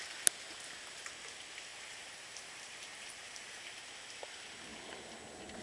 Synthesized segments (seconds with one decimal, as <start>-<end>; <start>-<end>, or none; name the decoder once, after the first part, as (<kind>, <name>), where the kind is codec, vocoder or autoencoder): 1.7-3.8 (vocoder, BigVGAN v2)